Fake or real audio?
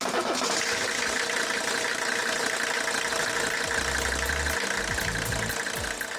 real